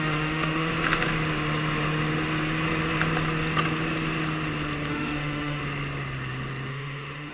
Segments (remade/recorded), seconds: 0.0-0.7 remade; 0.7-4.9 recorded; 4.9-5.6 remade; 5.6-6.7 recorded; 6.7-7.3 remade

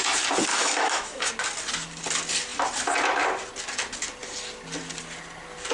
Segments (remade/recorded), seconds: 0.0-0.5 recorded; 0.5-1.3 remade; 1.3-5.7 recorded

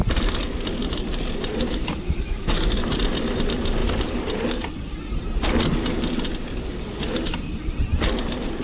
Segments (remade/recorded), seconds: 0.0-1.8 recorded; 1.8-2.9 remade; 2.9-8.6 recorded

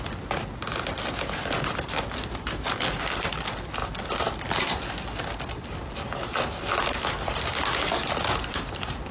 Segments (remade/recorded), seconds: 0.0-9.1 recorded

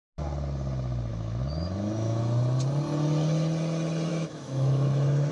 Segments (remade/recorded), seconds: 0.0-1.1 recorded; 1.1-2.2 remade; 2.2-4.1 recorded; 4.1-5.3 remade

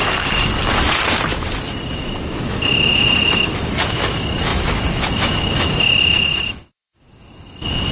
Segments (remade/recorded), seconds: 0.0-1.9 recorded; 1.9-7.9 remade

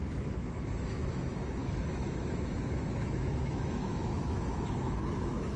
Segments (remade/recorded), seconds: 0.0-5.6 remade

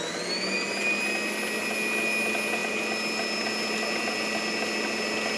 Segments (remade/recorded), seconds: 0.0-5.4 recorded